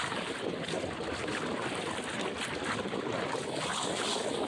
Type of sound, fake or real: real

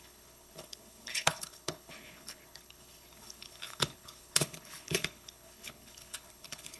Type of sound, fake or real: fake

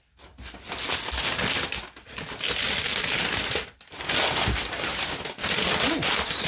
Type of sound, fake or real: real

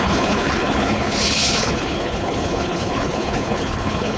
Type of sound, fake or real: fake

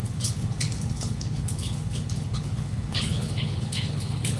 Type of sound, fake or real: fake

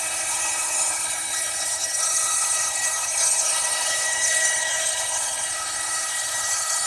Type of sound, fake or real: fake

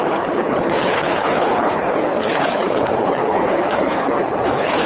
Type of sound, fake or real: fake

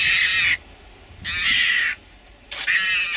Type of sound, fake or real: real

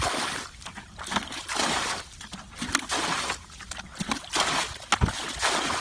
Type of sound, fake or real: real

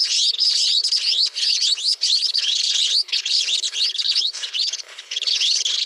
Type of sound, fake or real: fake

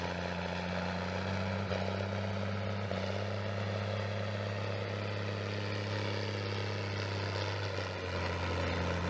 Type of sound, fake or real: real